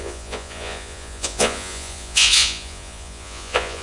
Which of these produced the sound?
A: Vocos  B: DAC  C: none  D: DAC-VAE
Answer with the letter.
A